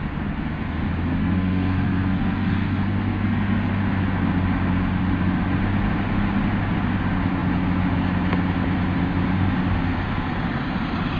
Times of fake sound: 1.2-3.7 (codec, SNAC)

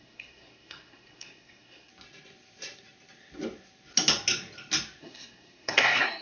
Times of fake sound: 0.0-1.9 (codec, SNAC); 5.0-6.2